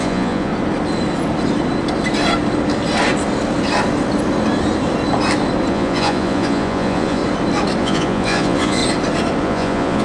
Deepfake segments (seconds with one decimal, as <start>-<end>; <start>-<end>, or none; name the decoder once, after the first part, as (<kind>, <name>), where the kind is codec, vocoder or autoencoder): 0.0-0.5 (vocoder, Vocos); 5.7-7.2; 7.8-8.8; 9.4-10.0